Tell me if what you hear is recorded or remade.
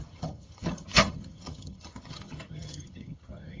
remade